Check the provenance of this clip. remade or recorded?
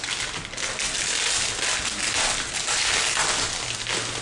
recorded